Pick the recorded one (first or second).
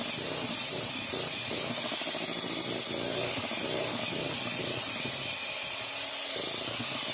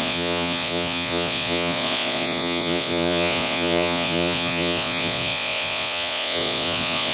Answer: first